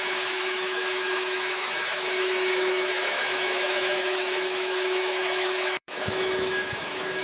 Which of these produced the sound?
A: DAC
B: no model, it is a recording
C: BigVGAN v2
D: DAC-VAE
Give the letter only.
D